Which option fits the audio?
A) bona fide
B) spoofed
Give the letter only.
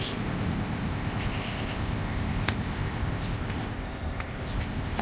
B